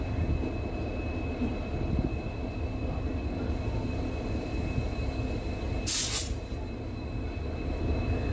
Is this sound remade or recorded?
recorded